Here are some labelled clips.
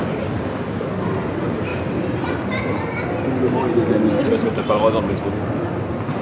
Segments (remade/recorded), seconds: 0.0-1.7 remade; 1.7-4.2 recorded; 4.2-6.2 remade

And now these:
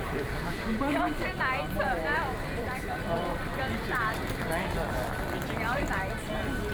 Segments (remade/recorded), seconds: 0.0-3.5 remade; 3.5-6.7 recorded

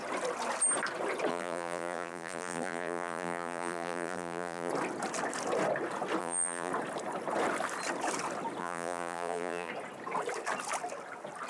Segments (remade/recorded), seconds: 0.0-1.3 recorded; 1.3-4.7 remade; 4.7-6.2 recorded; 6.2-6.7 remade; 6.7-8.6 recorded; 8.6-9.7 remade; 9.7-11.5 recorded

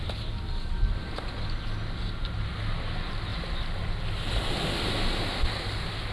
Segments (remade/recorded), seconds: 0.0-3.3 recorded; 3.3-3.9 remade; 3.9-6.1 recorded

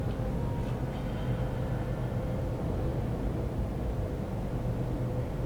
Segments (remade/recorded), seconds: 0.0-2.9 recorded; 2.9-4.4 remade; 4.4-5.5 recorded

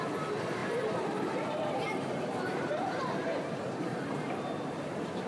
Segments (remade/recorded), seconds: 0.0-5.3 remade

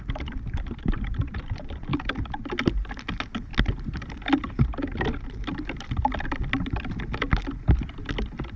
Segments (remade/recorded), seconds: 0.0-1.9 remade; 1.9-3.1 recorded; 3.1-3.5 remade; 3.5-8.6 recorded

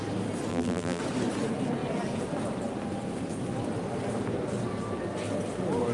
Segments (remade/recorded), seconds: 0.0-0.5 recorded; 0.5-1.0 remade; 1.0-5.9 recorded